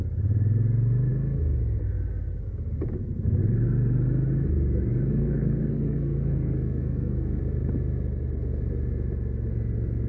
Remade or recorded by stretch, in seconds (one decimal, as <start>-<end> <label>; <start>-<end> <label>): 0.0-5.2 recorded; 5.2-7.4 remade; 7.4-10.1 recorded